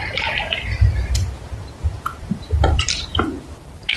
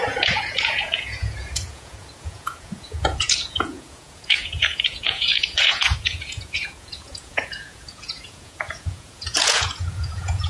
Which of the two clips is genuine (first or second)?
first